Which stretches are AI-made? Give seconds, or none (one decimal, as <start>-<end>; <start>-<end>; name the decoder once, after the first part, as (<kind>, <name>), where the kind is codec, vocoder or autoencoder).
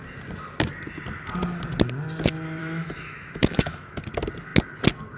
2.6-4.0 (autoencoder, DAC-VAE)